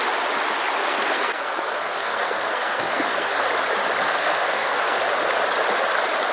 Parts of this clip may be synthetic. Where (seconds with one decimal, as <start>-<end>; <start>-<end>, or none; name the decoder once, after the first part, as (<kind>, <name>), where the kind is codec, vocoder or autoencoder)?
0.8-3.4 (codec, SNAC); 4.0-5.0

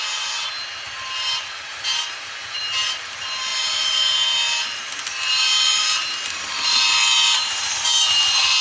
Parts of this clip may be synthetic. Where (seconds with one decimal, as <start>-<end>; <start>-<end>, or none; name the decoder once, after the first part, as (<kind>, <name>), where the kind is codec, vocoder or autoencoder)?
none

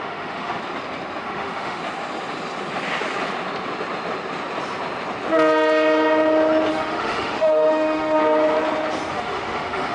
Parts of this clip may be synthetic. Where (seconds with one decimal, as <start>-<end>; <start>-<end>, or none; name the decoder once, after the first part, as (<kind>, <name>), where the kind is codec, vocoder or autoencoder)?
0.0-0.6 (autoencoder, DAC-VAE); 1.2-1.8; 6.7-8.2; 9.1-9.9

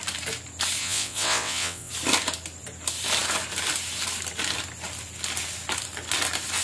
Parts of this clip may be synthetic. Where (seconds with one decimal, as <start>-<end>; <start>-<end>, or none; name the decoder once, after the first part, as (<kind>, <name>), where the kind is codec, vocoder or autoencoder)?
0.8-1.9 (vocoder, WaveNeXt)

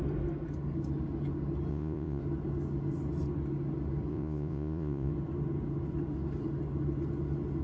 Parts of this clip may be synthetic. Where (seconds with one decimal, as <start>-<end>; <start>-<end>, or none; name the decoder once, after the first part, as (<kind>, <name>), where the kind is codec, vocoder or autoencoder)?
1.7-2.2 (vocoder, Vocos); 4.1-5.1

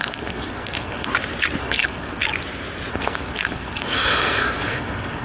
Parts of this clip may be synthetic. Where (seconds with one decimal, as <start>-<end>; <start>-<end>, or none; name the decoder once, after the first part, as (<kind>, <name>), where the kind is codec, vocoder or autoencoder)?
0.0-1.1 (codec, SNAC); 1.6-2.2; 2.9-5.2

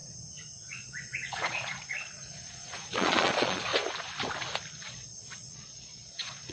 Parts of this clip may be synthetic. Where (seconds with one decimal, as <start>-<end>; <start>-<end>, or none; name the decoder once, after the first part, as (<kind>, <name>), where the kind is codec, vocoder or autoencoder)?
0.7-3.7 (vocoder, Vocos); 4.8-6.5